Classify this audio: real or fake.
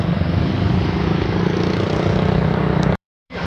fake